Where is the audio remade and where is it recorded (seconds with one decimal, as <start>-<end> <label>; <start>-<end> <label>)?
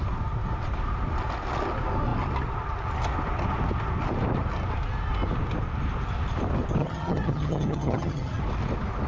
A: 0.0-6.8 recorded; 6.8-8.4 remade; 8.4-9.1 recorded